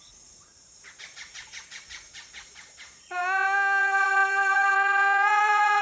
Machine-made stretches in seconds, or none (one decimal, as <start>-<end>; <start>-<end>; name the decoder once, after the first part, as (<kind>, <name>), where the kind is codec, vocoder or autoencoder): 0.0-3.2 (vocoder, Vocos); 3.8-5.8